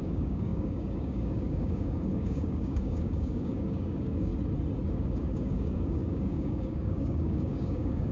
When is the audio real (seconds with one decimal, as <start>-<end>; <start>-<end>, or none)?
4.3-4.9